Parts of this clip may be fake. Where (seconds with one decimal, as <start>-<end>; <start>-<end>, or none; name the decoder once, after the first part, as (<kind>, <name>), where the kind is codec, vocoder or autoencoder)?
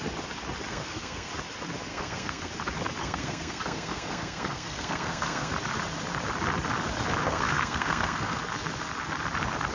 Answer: 0.7-1.3 (codec, SNAC); 1.9-2.5; 3.0-5.5; 7.2-8.4